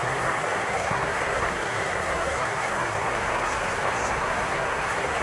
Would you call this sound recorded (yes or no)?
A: no